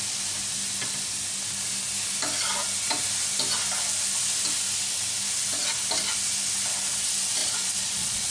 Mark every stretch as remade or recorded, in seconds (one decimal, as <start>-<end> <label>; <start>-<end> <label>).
0.0-7.4 recorded; 7.4-8.3 remade